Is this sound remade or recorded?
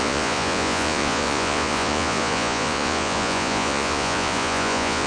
remade